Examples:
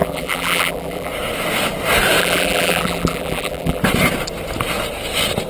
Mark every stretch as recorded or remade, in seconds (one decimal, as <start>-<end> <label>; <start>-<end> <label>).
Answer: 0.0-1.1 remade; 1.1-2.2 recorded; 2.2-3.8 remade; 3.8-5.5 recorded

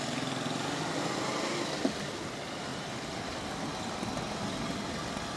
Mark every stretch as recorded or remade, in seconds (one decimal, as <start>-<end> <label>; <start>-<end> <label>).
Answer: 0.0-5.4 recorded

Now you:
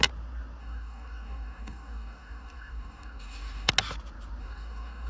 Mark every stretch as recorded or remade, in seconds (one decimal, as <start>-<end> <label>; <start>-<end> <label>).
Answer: 0.0-0.6 recorded; 0.6-3.7 remade; 3.7-4.4 recorded; 4.4-5.1 remade

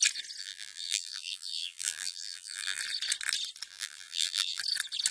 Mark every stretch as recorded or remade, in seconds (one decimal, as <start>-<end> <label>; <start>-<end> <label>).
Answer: 0.0-0.4 recorded; 0.4-2.8 remade; 2.8-3.7 recorded; 3.7-4.6 remade; 4.6-5.1 recorded